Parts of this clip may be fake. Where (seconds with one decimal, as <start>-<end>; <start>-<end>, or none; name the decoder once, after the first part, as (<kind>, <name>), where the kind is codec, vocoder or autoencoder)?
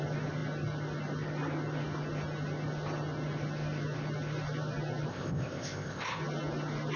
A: 5.1-6.2 (codec, ZipCodec)